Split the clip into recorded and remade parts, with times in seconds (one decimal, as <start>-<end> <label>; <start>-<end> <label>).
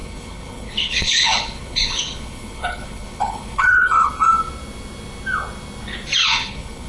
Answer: 0.0-4.1 remade; 4.1-6.2 recorded; 6.2-6.9 remade